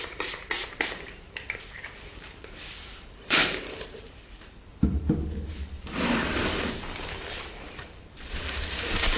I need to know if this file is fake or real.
fake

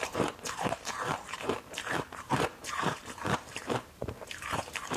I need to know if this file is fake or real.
fake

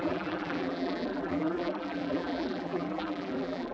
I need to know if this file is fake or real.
fake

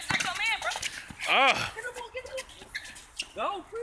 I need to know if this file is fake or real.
real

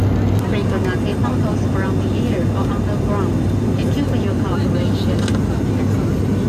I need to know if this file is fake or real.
real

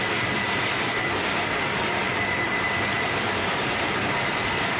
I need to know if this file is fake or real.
fake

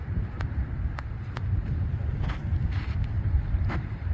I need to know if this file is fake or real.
fake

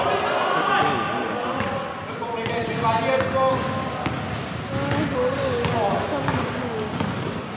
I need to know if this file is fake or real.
real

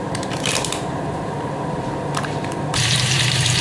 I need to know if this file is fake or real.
fake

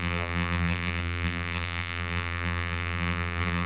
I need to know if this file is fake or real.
fake